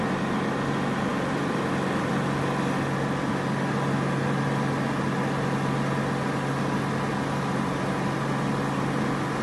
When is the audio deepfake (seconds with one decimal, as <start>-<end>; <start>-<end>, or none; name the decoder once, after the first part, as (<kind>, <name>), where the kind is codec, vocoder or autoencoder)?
1.1-2.1 (vocoder, BigVGAN v2)